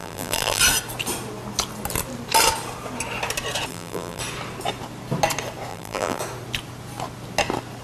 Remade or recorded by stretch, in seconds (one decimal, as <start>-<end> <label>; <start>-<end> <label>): 0.0-0.6 remade; 0.6-3.7 recorded; 3.7-4.2 remade; 4.2-5.7 recorded; 5.7-6.2 remade; 6.2-7.8 recorded